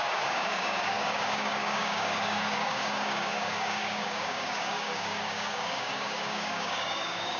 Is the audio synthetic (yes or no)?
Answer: yes